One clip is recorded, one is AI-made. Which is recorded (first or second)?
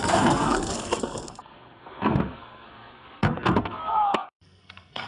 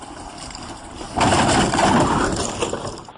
second